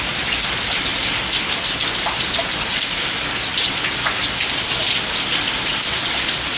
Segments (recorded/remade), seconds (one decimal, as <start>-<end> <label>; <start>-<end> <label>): 0.0-6.6 recorded